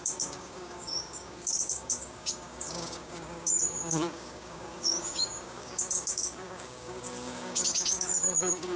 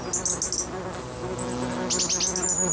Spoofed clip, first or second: first